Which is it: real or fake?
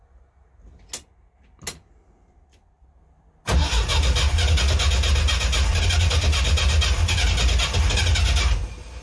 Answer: real